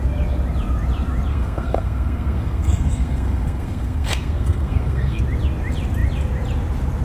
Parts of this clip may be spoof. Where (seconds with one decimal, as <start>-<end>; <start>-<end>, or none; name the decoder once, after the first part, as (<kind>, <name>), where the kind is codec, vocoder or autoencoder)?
1.3-5.2 (codec, SNAC)

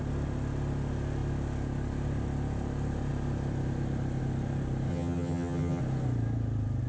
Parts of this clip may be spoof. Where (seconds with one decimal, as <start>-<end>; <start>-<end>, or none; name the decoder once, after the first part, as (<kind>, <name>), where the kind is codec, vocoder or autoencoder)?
4.9-5.8 (vocoder, HiFi-GAN)

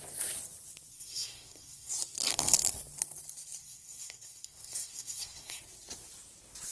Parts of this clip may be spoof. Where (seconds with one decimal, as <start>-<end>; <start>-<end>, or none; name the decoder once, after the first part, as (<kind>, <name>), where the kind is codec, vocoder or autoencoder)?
0.9-1.9 (codec, SNAC); 3.6-5.6

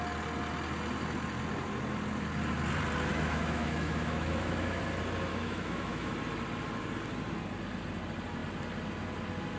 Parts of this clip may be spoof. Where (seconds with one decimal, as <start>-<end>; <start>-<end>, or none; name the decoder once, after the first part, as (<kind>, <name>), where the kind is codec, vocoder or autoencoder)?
3.1-4.8 (autoencoder, DAC-VAE); 5.3-6.1

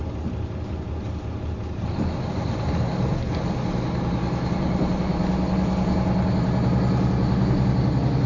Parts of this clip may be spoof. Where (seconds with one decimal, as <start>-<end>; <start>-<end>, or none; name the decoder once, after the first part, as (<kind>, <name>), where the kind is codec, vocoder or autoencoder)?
none

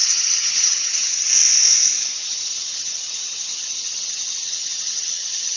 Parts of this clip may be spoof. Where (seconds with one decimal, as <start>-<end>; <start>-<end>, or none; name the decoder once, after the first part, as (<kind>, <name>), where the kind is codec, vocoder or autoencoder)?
0.0-1.3 (vocoder, HiFi-GAN); 2.1-5.6

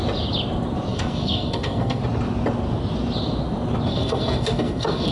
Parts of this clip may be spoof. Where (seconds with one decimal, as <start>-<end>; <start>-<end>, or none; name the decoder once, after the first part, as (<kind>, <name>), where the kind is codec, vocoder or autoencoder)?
0.9-2.0 (codec, SNAC); 3.9-5.1

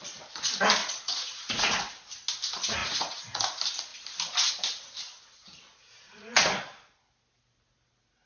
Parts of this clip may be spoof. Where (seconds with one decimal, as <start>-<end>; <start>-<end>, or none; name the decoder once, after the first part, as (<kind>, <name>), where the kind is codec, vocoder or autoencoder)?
0.8-1.7 (vocoder, Vocos); 2.8-3.4; 5.7-6.5